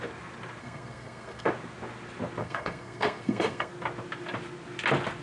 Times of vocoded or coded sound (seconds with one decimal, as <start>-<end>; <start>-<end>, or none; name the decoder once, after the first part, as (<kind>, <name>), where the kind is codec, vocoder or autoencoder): 0.6-1.5 (codec, SNAC); 2.4-3.7